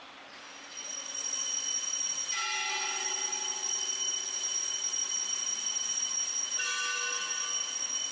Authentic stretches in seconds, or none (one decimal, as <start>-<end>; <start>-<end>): 0.0-8.1